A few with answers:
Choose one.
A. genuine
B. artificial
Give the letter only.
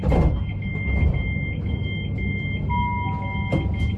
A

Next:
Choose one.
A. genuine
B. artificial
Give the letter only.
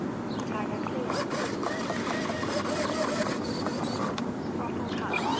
B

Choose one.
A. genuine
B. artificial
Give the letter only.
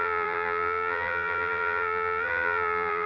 B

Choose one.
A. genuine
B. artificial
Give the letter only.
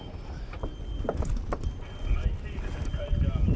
A